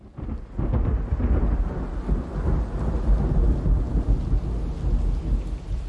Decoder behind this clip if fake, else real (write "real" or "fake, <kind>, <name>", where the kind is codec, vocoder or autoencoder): real